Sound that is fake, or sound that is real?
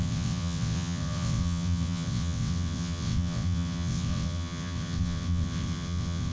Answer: fake